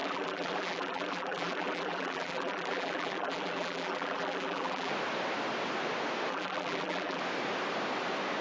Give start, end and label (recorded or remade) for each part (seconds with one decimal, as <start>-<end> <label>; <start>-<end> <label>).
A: 0.0-4.9 remade; 4.9-6.3 recorded; 6.3-7.2 remade; 7.2-8.4 recorded